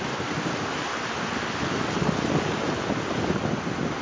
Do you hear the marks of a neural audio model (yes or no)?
no